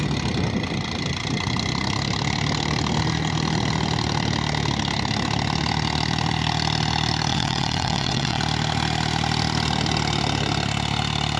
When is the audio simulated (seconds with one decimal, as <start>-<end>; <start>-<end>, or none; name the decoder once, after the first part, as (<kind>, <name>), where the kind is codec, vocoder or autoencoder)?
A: 7.3-8.4 (vocoder, WaveNeXt)